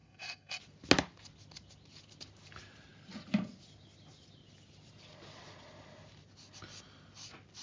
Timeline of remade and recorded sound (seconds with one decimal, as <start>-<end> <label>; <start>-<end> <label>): 0.0-0.6 remade; 0.6-7.6 recorded